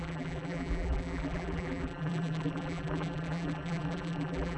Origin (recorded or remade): remade